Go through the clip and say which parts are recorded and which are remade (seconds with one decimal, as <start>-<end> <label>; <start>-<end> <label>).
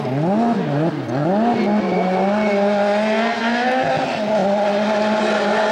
0.0-5.7 recorded